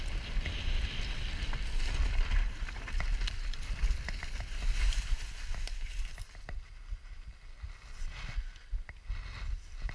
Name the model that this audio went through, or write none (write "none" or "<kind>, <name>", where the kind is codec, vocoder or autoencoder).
none